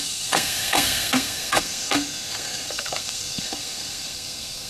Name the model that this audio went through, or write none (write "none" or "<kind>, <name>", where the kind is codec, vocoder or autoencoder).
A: codec, SNAC